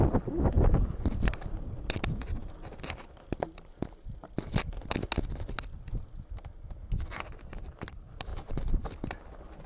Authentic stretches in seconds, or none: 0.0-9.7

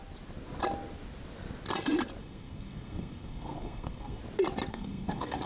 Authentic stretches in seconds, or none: 0.0-2.2; 4.2-4.7

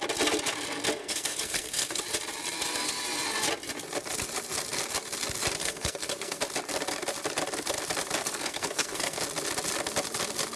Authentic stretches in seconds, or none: 0.0-1.0; 2.0-5.6; 6.4-8.2; 9.2-10.6